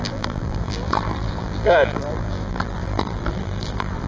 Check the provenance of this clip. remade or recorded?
remade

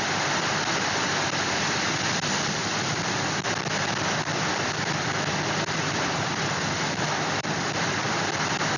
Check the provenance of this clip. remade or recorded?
remade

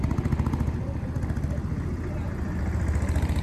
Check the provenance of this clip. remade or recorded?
recorded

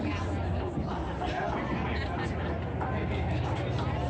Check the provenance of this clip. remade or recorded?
recorded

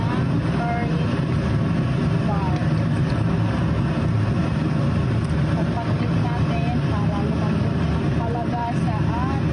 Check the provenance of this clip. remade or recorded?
recorded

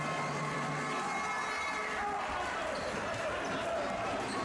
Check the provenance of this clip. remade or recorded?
recorded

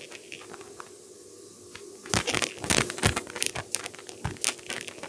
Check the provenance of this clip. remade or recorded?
recorded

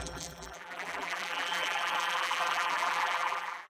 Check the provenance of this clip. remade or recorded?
remade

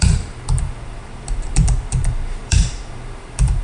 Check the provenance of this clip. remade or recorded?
remade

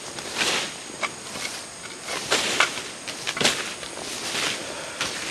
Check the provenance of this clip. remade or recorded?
recorded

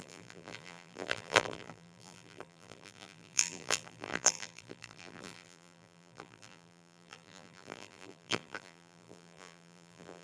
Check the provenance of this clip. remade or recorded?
remade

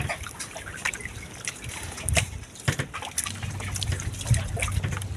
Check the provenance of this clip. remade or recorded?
remade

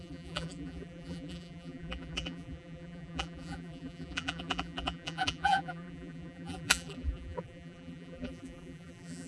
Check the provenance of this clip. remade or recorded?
remade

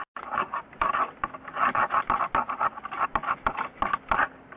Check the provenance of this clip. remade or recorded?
recorded